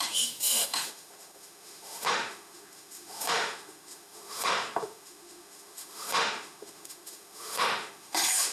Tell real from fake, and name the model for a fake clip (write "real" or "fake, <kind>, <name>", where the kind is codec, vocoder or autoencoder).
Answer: fake, autoencoder, DAC-VAE